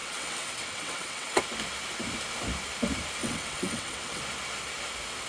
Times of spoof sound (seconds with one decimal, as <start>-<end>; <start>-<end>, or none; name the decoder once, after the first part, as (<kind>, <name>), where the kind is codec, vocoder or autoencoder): 0.0-1.4 (vocoder, WaveNeXt); 3.2-4.2